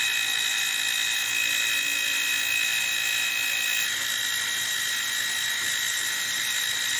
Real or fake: real